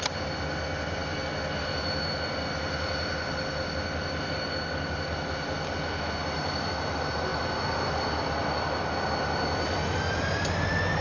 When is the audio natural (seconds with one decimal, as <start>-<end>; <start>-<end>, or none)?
0.0-11.0